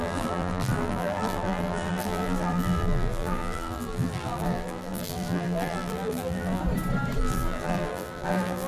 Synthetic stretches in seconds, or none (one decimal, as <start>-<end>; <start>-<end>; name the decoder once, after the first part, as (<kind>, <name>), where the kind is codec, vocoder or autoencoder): 0.0-6.6 (vocoder, BigVGAN v2); 7.2-8.7